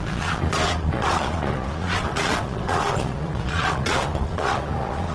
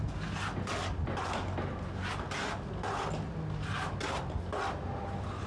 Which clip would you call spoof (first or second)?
first